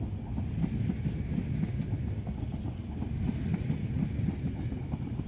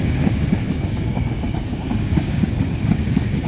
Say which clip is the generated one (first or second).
second